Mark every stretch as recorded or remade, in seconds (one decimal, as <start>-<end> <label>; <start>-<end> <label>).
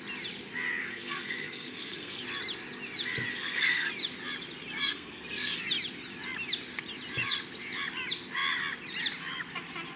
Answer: 0.0-0.8 recorded; 0.8-2.2 remade; 2.2-3.3 recorded; 3.3-3.9 remade; 3.9-4.8 recorded; 4.8-5.6 remade; 5.6-10.0 recorded